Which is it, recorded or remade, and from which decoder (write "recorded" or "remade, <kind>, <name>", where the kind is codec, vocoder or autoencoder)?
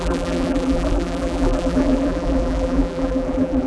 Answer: remade, vocoder, BigVGAN v2